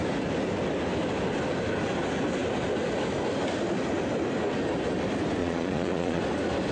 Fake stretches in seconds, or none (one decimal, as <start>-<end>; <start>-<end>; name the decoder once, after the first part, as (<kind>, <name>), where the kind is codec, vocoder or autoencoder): 5.4-6.2 (vocoder, Vocos)